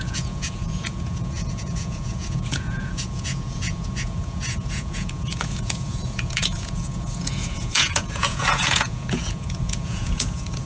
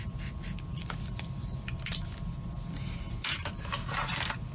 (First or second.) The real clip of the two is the second